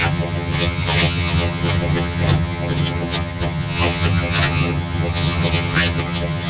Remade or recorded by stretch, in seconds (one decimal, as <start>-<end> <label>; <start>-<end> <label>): 0.0-6.5 remade